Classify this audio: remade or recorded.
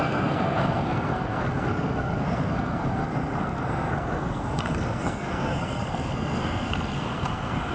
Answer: remade